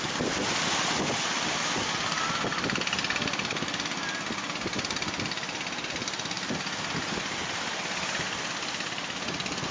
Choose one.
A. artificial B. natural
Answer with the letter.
B